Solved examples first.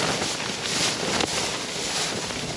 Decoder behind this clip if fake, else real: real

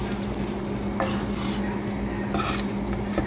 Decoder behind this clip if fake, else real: real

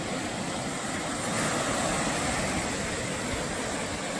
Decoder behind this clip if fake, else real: real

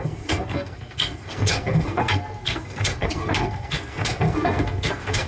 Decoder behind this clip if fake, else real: fake, codec, SNAC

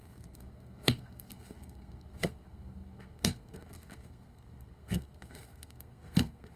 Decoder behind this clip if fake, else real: fake, codec, SNAC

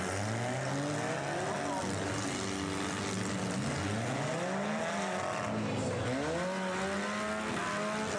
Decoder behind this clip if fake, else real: real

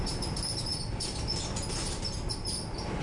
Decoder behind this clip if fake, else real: real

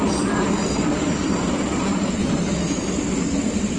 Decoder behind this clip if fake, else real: real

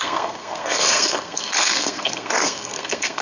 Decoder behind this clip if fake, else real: fake, codec, SNAC